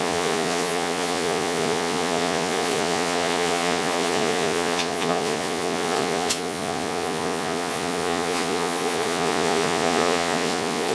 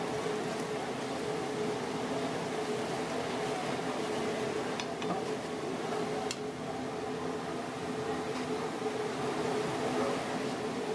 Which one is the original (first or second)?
second